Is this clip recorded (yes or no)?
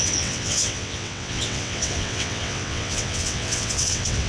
no